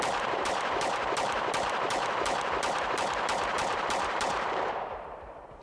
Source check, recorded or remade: remade